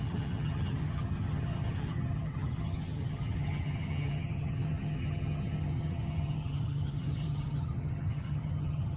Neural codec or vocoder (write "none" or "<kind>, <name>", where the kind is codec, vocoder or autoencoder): vocoder, HiFi-GAN